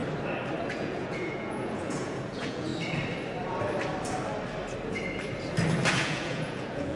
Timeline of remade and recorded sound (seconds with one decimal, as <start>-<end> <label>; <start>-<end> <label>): 0.0-0.7 recorded; 0.7-2.7 remade; 2.7-5.9 recorded; 5.9-7.0 remade